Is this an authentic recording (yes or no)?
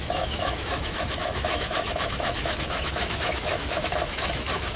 no